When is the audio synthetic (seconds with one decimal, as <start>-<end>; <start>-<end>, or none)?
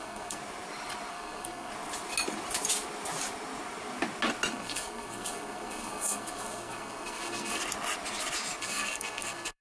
0.0-0.4; 1.1-1.7; 4.5-7.6; 8.6-9.6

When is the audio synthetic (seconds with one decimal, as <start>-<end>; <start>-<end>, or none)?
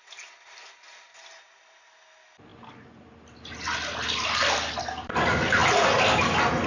none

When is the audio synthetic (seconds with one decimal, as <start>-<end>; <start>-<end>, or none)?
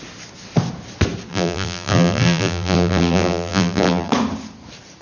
1.3-4.1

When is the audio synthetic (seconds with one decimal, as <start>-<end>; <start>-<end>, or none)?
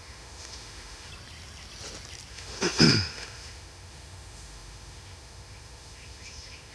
0.0-1.1; 2.3-6.7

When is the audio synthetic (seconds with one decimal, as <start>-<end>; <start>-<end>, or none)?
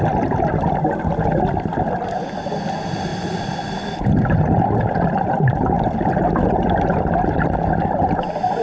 none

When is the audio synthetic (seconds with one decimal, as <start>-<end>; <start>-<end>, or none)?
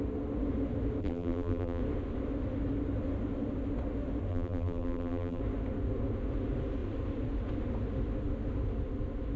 1.0-1.8; 4.3-5.4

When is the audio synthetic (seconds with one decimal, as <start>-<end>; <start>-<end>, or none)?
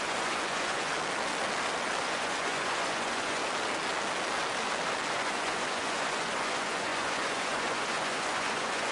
0.0-0.9; 2.0-3.4; 5.1-8.9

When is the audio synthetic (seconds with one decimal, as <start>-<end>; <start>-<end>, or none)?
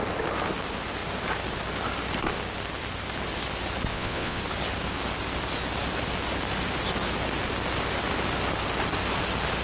3.9-4.4